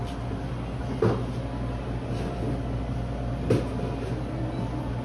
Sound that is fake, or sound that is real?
real